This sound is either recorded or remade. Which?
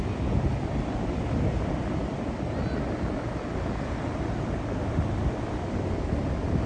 recorded